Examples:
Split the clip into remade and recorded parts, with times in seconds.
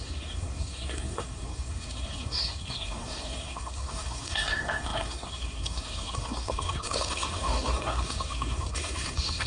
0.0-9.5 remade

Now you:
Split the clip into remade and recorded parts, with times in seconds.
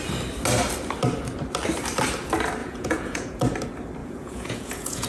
0.0-2.6 recorded; 2.6-3.4 remade; 3.4-4.0 recorded; 4.0-5.1 remade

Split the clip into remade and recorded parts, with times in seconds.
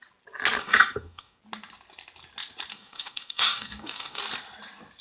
0.0-0.6 recorded; 0.6-1.4 remade; 1.4-2.7 recorded; 2.7-4.2 remade; 4.2-5.0 recorded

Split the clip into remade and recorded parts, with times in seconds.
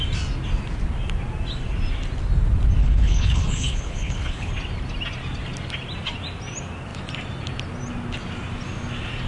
0.0-2.8 recorded; 2.8-4.5 remade; 4.5-9.3 recorded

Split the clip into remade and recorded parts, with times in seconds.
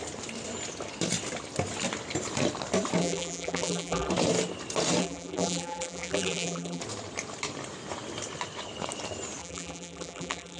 0.0-3.0 recorded; 3.0-4.1 remade; 4.1-5.0 recorded; 5.0-6.8 remade; 6.8-9.4 recorded; 9.4-10.6 remade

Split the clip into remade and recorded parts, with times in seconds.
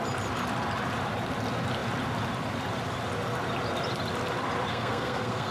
0.0-4.7 recorded; 4.7-5.5 remade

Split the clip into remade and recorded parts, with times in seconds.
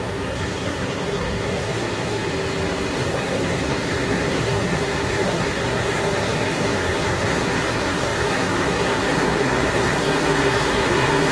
0.0-2.3 remade; 2.3-2.9 recorded; 2.9-11.3 remade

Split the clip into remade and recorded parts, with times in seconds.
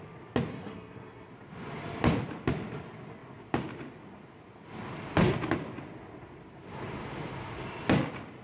0.0-0.5 recorded; 0.5-1.3 remade; 1.3-8.4 recorded